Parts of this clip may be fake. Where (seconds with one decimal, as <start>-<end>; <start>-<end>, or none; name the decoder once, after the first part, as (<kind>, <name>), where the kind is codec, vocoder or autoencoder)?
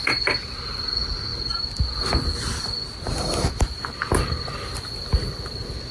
none